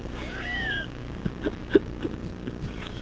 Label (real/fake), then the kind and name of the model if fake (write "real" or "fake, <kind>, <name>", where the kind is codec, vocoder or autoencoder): fake, codec, DAC